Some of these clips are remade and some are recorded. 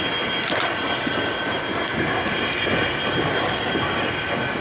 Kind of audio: recorded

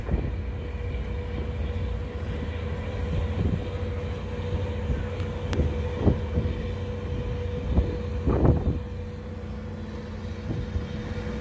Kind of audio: recorded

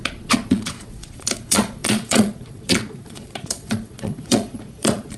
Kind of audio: remade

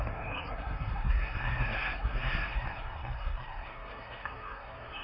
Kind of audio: remade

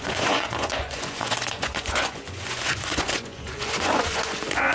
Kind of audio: remade